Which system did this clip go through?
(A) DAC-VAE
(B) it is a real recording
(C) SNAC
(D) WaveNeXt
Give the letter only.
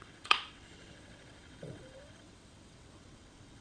D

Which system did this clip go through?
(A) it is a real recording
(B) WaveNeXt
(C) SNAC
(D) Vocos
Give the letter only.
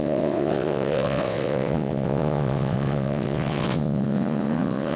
B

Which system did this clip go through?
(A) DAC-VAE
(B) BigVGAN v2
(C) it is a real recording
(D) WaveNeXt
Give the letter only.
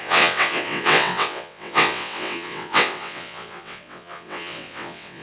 D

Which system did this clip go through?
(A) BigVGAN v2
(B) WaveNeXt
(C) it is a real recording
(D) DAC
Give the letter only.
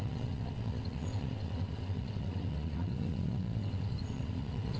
B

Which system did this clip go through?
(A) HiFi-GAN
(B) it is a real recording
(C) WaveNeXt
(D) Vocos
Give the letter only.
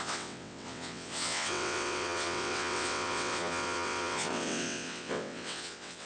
C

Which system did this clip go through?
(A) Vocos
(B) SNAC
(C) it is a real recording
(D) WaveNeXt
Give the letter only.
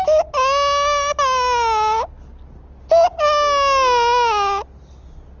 C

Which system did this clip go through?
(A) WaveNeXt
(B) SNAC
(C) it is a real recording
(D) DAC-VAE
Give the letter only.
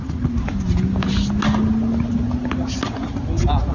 C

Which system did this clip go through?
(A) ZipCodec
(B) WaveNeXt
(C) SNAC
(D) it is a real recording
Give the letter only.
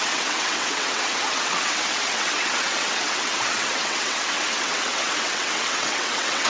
B